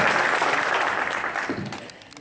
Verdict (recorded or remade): recorded